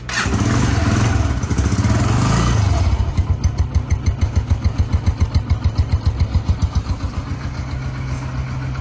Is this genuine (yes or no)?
yes